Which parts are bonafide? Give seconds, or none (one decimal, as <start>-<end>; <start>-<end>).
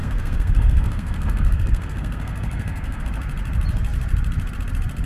3.0-5.0